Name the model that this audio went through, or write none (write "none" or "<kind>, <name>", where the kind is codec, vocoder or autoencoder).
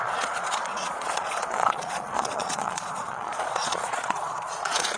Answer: vocoder, Vocos